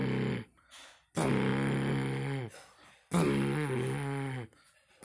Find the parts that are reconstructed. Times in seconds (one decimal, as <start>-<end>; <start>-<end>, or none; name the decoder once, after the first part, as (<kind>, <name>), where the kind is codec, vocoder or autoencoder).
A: none